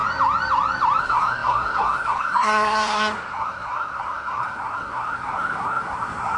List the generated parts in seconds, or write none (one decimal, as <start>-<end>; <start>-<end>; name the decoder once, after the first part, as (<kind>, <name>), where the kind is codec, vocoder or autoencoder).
1.0-6.4 (codec, SNAC)